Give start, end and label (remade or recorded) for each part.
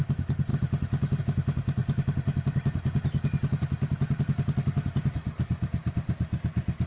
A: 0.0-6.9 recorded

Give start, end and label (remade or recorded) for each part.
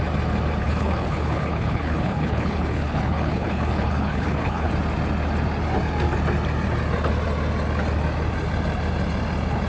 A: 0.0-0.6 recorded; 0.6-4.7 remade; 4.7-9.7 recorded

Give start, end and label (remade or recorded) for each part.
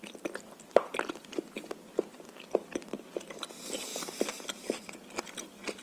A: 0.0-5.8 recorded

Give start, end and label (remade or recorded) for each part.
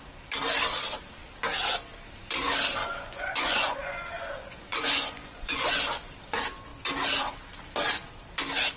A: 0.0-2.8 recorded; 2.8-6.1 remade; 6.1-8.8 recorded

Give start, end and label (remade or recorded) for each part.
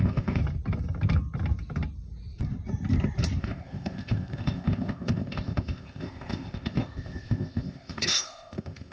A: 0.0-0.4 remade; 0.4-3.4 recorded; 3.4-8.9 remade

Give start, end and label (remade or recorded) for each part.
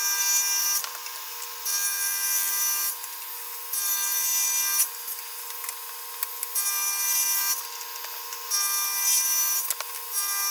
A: 0.0-1.7 recorded; 1.7-2.5 remade; 2.5-10.5 recorded